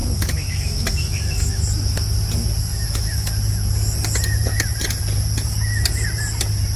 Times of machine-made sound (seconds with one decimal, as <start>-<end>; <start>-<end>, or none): 0.0-1.6; 2.7-3.3